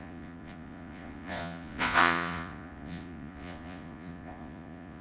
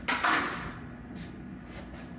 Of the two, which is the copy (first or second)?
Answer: first